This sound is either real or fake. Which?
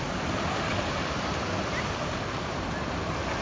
real